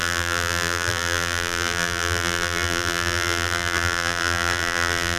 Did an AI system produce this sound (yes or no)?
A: yes